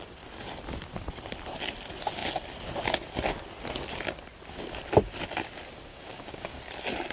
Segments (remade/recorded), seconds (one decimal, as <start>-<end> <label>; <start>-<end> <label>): 0.0-5.9 recorded; 5.9-6.6 remade; 6.6-7.1 recorded